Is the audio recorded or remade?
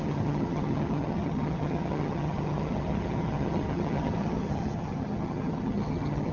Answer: remade